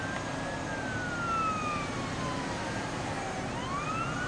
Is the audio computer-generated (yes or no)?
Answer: no